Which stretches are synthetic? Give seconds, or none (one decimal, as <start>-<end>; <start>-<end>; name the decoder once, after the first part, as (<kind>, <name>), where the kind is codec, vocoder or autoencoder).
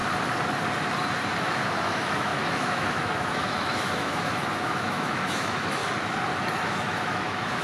1.4-5.8 (autoencoder, DAC-VAE); 6.5-7.6